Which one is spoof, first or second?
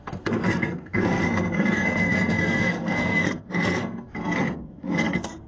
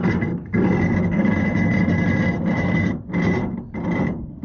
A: first